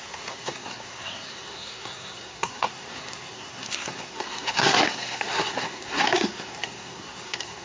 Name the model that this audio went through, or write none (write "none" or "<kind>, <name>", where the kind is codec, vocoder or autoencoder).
codec, SNAC